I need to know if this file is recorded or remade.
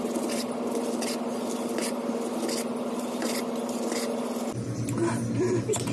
recorded